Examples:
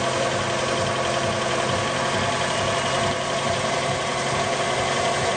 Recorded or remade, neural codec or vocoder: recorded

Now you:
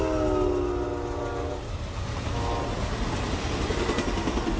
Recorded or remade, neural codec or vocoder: recorded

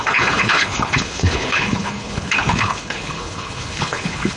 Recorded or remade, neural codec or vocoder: remade, codec, HILCodec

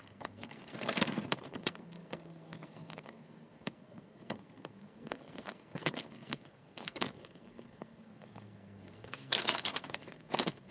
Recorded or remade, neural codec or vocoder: remade, codec, SNAC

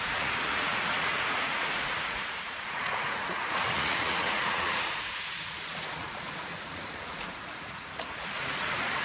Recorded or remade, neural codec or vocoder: remade, vocoder, Vocos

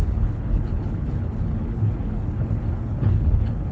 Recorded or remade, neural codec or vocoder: remade, codec, HILCodec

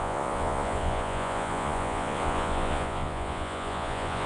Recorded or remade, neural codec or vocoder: remade, vocoder, Vocos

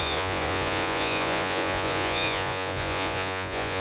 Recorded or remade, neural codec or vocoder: remade, vocoder, Vocos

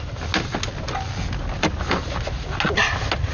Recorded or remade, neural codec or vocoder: recorded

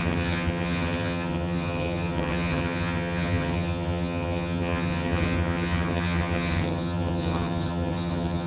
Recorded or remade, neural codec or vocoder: remade, vocoder, HiFi-GAN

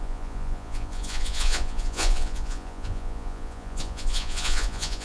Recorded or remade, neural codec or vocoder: remade, vocoder, Vocos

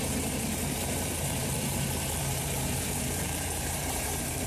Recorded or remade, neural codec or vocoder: remade, vocoder, BigVGAN v2